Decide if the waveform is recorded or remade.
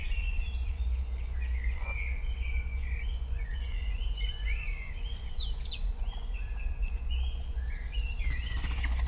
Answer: remade